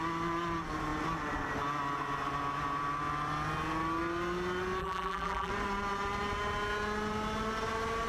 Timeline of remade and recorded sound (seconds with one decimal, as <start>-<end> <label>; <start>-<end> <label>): 0.0-4.8 recorded; 4.8-5.5 remade; 5.5-8.1 recorded